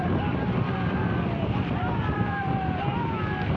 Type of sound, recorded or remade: remade